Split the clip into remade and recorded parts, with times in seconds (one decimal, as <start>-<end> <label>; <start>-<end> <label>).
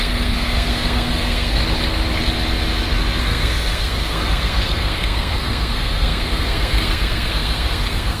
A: 0.0-1.6 remade; 1.6-3.2 recorded; 3.2-8.2 remade